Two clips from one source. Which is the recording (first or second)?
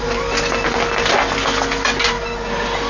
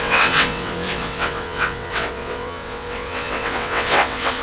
first